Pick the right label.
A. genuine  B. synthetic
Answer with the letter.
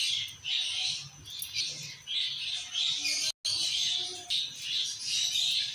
A